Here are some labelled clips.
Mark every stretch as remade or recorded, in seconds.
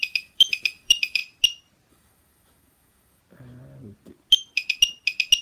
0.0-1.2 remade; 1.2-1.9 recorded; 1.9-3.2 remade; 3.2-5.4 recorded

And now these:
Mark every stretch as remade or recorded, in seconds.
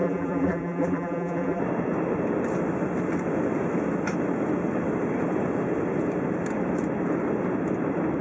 0.0-1.6 remade; 1.6-8.2 recorded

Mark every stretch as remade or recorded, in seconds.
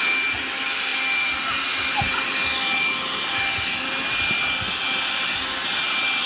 0.0-6.3 recorded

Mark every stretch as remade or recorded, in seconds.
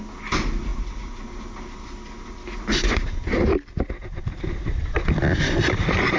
0.0-6.2 recorded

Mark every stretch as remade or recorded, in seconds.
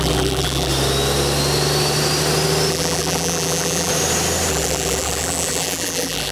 0.0-0.7 remade; 0.7-2.7 recorded; 2.7-3.9 remade; 3.9-4.5 recorded; 4.5-6.3 remade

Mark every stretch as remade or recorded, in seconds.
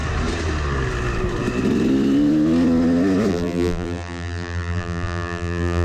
0.0-3.3 recorded; 3.3-5.8 remade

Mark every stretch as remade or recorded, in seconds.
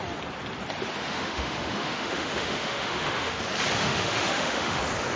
0.0-1.0 recorded; 1.0-3.4 remade; 3.4-3.8 recorded; 3.8-4.8 remade; 4.8-5.2 recorded